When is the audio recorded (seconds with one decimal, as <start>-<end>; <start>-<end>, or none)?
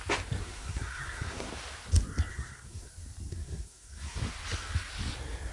0.0-0.4; 1.5-2.3; 2.9-3.3; 4.2-5.5